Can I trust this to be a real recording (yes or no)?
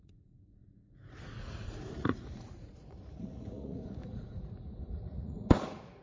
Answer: no